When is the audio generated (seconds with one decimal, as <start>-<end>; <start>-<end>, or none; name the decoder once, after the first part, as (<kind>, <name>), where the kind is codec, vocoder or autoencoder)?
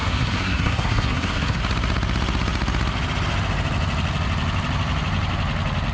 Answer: 0.0-1.6 (codec, SNAC)